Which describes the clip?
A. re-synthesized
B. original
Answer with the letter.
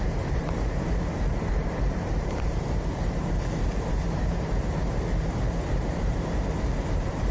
A